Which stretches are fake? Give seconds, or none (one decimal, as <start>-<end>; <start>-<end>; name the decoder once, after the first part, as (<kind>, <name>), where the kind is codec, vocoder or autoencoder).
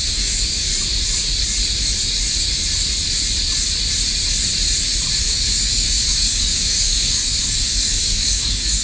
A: 0.0-0.7 (codec, DAC); 5.2-8.8